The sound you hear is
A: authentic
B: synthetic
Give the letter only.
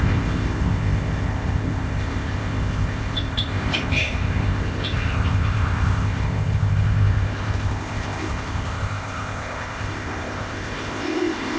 B